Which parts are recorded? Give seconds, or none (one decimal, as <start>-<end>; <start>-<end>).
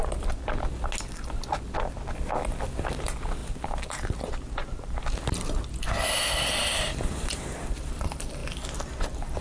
0.0-3.4; 5.0-9.4